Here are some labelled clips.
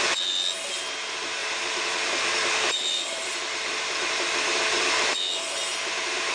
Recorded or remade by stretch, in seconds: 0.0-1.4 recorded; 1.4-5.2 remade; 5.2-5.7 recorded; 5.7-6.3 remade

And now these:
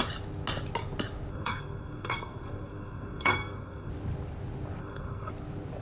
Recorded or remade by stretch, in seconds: 0.0-1.3 recorded; 1.3-3.9 remade; 3.9-4.8 recorded; 4.8-5.3 remade; 5.3-5.8 recorded